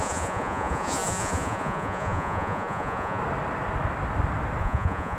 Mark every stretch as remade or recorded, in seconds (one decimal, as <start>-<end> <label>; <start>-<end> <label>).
0.0-3.2 remade; 3.2-4.6 recorded; 4.6-5.2 remade